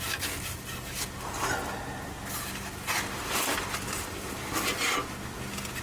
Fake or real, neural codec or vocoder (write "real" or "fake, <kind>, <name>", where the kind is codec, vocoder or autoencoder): real